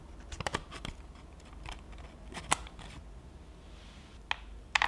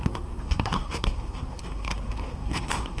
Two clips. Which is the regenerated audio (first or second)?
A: second